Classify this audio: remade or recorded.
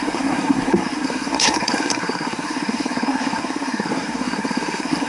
remade